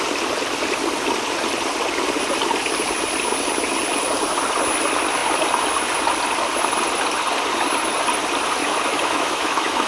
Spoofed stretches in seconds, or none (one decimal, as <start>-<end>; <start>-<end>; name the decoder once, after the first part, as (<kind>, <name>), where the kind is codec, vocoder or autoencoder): 8.6-9.9 (autoencoder, DAC-VAE)